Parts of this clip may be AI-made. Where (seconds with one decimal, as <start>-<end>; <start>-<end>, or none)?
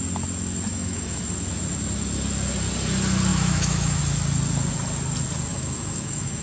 0.7-1.2; 3.3-4.0; 5.5-6.4